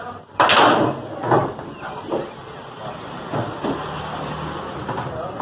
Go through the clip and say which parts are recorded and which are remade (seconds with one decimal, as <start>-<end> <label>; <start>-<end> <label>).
0.0-1.4 recorded; 1.4-4.6 remade; 4.6-5.4 recorded